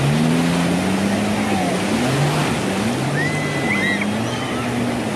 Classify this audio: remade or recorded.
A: recorded